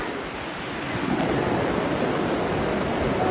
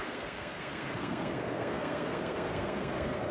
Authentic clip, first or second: first